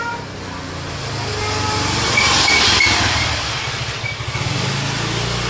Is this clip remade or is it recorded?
recorded